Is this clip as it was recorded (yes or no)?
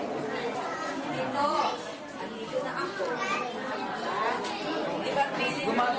yes